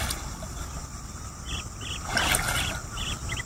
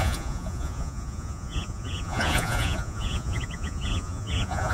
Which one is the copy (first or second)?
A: second